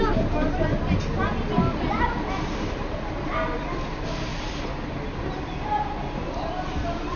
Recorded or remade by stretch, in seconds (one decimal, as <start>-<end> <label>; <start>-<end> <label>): 0.0-7.2 recorded

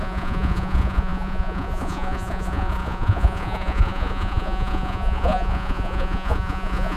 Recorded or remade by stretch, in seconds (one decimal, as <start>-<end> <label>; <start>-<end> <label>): 0.0-7.0 remade

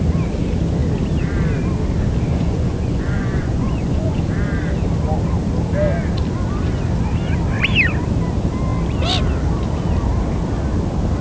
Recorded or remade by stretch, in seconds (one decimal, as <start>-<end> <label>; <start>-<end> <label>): 0.0-2.3 recorded; 2.3-4.2 remade; 4.2-11.2 recorded

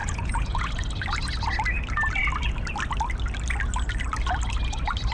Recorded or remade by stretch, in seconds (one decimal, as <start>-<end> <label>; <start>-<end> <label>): 0.0-0.7 remade; 0.7-5.1 recorded

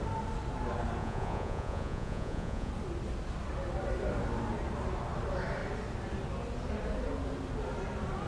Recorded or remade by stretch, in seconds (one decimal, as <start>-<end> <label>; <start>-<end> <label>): 0.0-1.0 recorded; 1.0-2.7 remade; 2.7-8.3 recorded

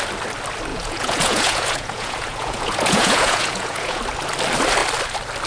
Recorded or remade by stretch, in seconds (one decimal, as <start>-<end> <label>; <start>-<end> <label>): 0.0-0.7 recorded; 0.7-4.0 remade; 4.0-5.5 recorded